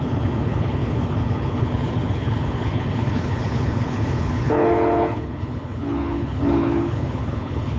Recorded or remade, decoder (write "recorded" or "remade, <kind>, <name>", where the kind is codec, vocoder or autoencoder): remade, codec, HILCodec